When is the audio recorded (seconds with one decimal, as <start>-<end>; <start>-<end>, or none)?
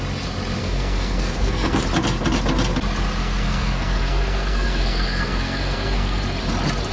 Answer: 0.0-0.6; 1.8-3.2; 6.2-6.9